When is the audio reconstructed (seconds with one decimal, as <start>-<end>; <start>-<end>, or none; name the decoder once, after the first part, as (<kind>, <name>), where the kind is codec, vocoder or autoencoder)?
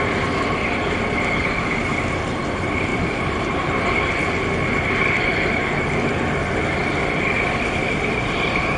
2.9-3.8 (vocoder, BigVGAN v2)